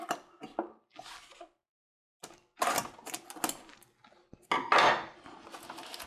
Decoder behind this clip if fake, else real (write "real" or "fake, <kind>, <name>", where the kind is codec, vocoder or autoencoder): real